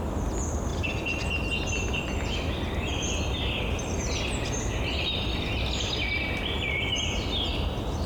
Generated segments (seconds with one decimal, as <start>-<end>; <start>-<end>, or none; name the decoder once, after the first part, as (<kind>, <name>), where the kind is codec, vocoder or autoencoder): none